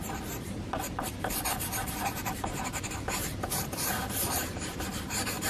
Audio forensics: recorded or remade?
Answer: remade